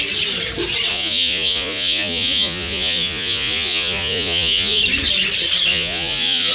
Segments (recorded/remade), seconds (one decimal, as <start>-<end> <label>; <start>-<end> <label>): 0.0-0.9 recorded; 0.9-4.8 remade; 4.8-5.7 recorded; 5.7-6.5 remade